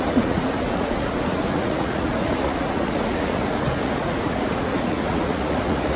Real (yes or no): no